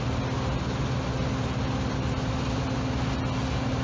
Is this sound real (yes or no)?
yes